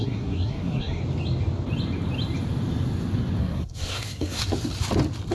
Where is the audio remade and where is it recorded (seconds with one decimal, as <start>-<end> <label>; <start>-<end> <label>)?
0.0-1.0 remade; 1.0-3.4 recorded; 3.4-4.5 remade; 4.5-5.3 recorded